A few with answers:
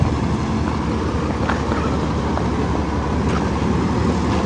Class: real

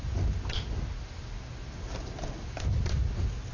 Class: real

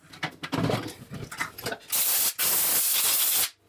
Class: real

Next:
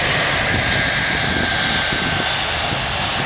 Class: real